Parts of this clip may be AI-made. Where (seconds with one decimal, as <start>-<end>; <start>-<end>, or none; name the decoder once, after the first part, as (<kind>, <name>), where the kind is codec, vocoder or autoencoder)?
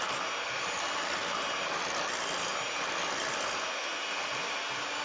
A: none